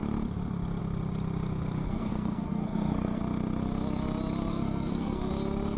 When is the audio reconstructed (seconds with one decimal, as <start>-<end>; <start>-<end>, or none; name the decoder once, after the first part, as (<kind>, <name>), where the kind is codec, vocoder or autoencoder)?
1.8-3.2 (codec, SNAC); 4.5-5.3